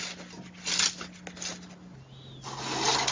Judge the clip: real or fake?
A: real